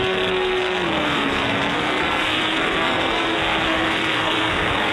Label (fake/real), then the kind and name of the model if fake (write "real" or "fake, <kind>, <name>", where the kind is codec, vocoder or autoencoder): fake, codec, SNAC